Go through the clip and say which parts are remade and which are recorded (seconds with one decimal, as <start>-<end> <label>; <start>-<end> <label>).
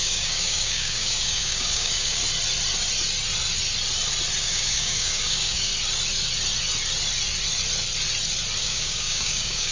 0.0-2.2 remade; 2.2-4.4 recorded; 4.4-5.7 remade; 5.7-8.6 recorded; 8.6-9.7 remade